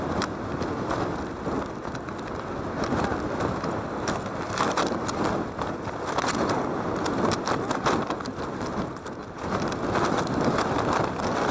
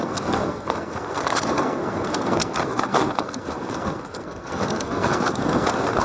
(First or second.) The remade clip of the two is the second